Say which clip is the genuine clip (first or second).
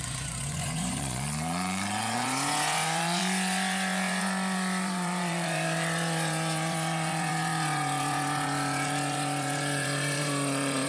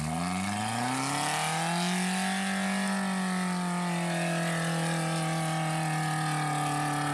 second